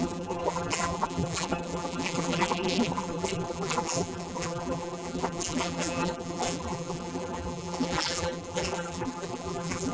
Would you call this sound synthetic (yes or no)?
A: yes